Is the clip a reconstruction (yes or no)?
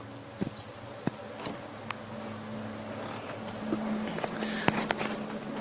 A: no